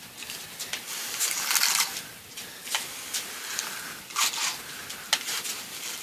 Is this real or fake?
real